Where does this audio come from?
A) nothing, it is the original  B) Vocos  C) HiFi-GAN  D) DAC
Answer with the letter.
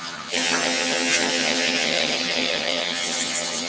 C